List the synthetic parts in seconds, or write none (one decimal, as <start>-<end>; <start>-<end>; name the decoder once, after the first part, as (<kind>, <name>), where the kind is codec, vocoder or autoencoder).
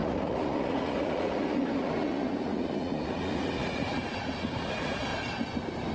0.0-5.1 (vocoder, Vocos)